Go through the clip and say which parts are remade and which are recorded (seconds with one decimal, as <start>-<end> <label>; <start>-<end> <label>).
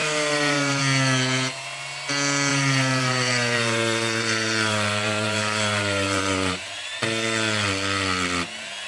0.0-0.8 remade; 0.8-2.5 recorded; 2.5-7.0 remade; 7.0-8.9 recorded